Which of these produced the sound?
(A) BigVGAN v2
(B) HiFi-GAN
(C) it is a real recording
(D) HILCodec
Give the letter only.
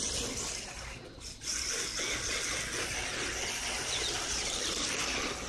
C